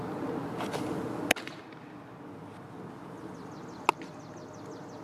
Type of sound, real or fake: real